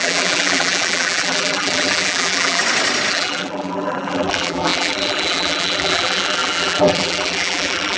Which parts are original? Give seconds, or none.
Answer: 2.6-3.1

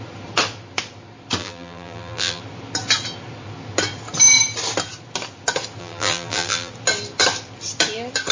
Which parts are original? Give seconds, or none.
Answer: 0.0-1.4; 2.4-5.8; 6.7-8.3

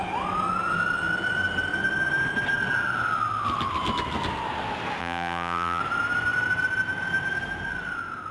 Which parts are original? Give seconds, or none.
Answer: 0.0-5.0; 5.8-8.3